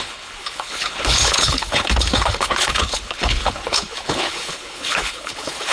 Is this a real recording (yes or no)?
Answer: no